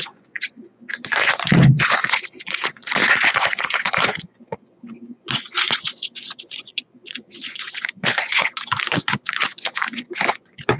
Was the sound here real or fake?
fake